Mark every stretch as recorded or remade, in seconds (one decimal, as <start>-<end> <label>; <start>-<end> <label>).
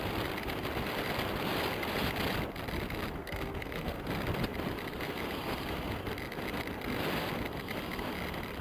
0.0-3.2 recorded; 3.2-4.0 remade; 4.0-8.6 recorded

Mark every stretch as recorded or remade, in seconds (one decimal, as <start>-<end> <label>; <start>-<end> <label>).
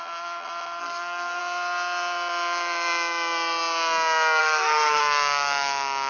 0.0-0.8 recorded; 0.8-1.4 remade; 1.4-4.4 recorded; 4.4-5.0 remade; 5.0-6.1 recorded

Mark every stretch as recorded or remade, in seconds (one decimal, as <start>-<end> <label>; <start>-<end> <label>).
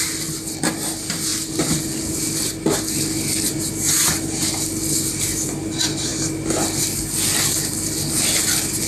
0.0-8.9 recorded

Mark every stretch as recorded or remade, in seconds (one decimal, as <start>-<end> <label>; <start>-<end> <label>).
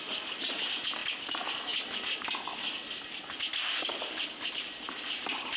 0.0-5.6 recorded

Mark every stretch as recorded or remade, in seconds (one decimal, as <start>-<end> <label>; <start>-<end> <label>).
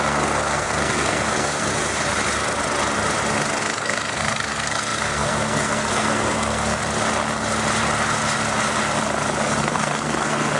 0.0-1.7 remade; 1.7-3.6 recorded; 3.6-6.8 remade; 6.8-9.6 recorded; 9.6-10.6 remade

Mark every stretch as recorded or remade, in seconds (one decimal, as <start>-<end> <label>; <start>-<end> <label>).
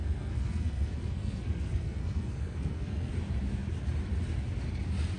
0.0-3.1 remade; 3.1-5.2 recorded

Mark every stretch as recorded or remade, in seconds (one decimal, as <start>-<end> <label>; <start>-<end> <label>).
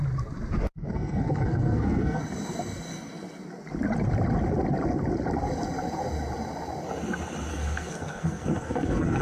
0.0-0.8 recorded; 0.8-2.2 remade; 2.2-7.5 recorded; 7.5-9.2 remade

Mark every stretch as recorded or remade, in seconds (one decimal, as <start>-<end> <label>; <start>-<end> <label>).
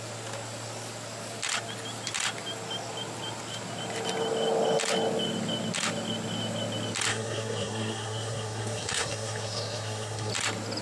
0.0-7.1 recorded; 7.1-10.3 remade; 10.3-10.8 recorded